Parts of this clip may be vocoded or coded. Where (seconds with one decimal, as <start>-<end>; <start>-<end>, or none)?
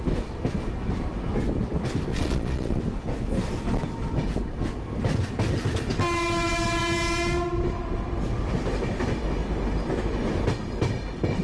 2.1-2.8